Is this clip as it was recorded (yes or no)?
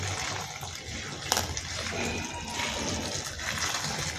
yes